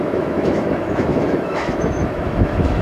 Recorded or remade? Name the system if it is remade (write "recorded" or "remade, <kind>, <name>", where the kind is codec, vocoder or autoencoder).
remade, autoencoder, DAC-VAE